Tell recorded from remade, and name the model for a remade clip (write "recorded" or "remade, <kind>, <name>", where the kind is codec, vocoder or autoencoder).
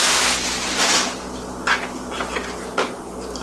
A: recorded